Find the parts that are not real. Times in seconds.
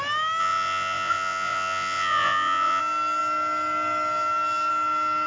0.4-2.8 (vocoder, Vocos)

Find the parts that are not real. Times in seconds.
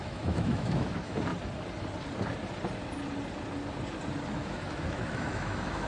0.0-1.3 (autoencoder, DAC-VAE); 4.3-5.9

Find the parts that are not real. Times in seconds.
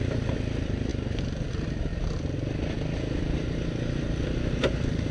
none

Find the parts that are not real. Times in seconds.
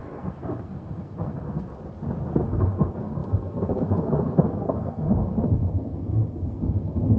0.0-1.7 (codec, SNAC); 2.4-7.2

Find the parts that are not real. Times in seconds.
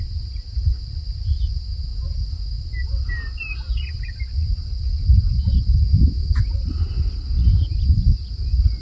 5.9-6.4 (autoencoder, DAC-VAE)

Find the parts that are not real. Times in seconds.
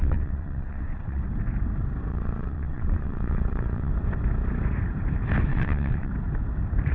0.0-1.2 (vocoder, WaveNeXt); 2.1-3.9; 5.5-6.1